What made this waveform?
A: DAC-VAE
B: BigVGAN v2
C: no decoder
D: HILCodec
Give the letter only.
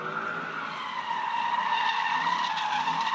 C